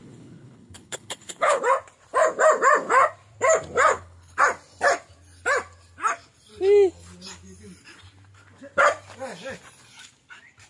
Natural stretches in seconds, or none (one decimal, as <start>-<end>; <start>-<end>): 1.6-3.9; 4.4-10.7